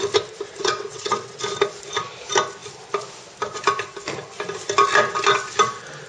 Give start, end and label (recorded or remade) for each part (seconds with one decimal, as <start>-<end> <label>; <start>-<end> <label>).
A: 0.0-0.6 recorded; 0.6-1.4 remade; 1.4-6.1 recorded